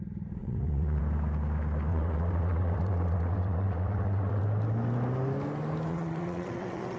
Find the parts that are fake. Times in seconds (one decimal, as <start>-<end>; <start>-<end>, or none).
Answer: 0.4-1.0; 1.9-4.4; 5.9-7.0